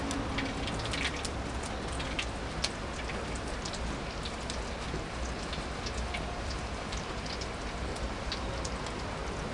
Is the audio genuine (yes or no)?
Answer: yes